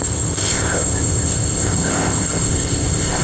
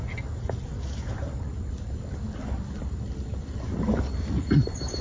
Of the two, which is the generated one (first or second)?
first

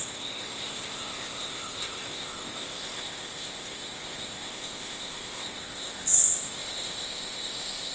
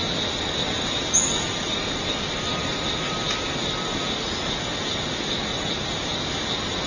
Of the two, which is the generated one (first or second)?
first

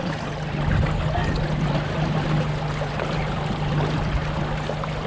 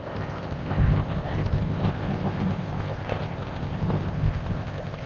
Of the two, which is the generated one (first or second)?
second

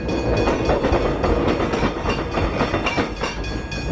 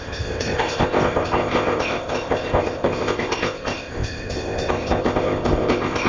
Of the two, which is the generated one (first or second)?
second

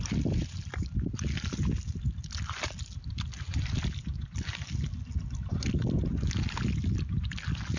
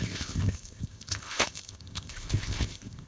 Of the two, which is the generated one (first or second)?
second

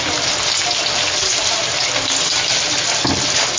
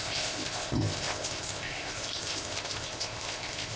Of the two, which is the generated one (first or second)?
second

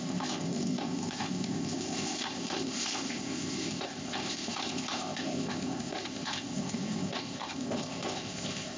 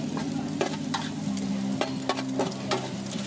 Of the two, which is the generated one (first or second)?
first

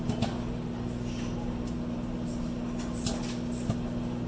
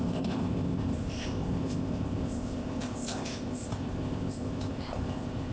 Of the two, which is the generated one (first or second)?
second